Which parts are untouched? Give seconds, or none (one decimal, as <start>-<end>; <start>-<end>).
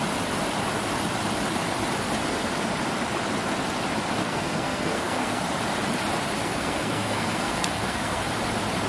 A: 0.0-4.2; 5.4-6.4; 8.2-8.9